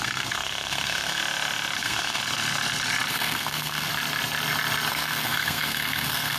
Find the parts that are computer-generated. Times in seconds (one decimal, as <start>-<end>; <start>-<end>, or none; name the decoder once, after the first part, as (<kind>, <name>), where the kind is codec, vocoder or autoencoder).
0.0-1.2 (codec, SNAC); 1.8-2.2; 3.1-3.9; 4.9-6.4